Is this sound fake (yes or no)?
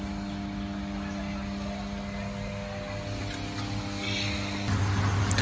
no